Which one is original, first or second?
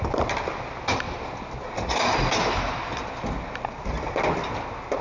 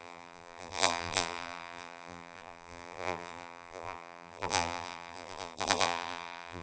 first